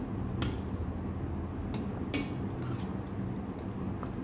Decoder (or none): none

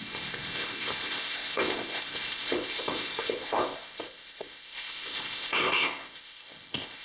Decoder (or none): codec, ZipCodec